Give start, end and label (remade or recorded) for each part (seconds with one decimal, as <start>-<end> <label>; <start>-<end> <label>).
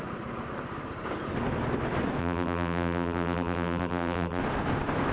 0.0-2.2 recorded; 2.2-4.4 remade; 4.4-5.1 recorded